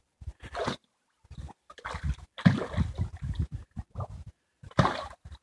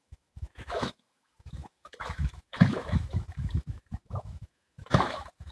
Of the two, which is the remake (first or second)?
second